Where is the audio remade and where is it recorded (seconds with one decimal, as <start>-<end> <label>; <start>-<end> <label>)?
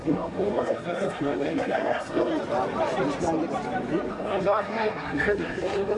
0.0-2.3 remade; 2.3-4.1 recorded; 4.1-6.0 remade